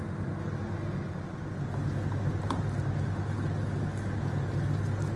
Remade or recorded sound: recorded